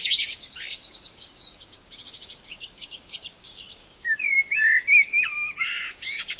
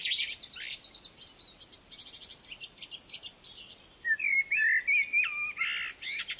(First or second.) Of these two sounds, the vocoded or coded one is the first